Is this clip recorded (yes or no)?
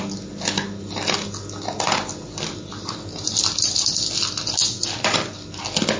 yes